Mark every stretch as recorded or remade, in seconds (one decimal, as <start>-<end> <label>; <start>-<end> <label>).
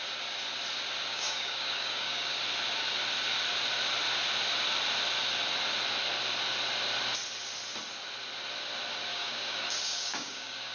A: 0.0-1.1 recorded; 1.1-2.4 remade; 2.4-9.1 recorded; 9.1-10.7 remade